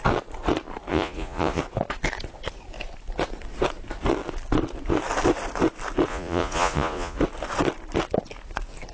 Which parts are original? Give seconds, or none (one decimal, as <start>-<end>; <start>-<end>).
0.0-0.9; 1.6-6.1; 7.2-8.9